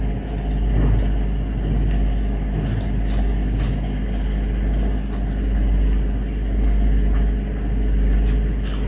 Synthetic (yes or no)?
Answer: no